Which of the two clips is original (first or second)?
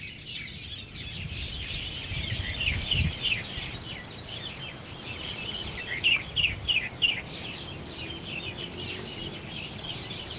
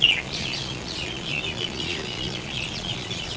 first